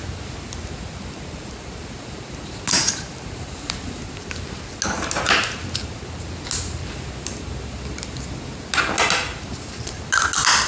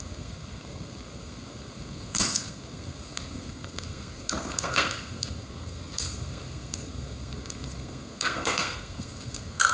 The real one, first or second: first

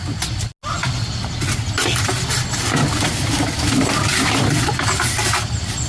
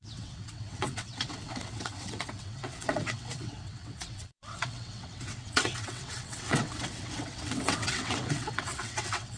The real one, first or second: first